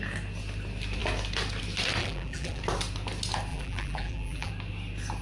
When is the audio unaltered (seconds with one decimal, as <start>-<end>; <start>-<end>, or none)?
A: 0.0-2.0; 2.6-3.5; 4.5-5.2